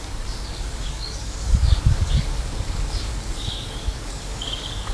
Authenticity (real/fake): fake